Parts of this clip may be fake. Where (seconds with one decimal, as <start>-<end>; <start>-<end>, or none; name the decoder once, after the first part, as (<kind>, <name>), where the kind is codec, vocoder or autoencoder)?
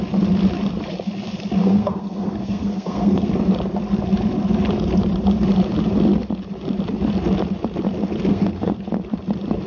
1.6-3.3 (codec, SNAC); 8.3-8.8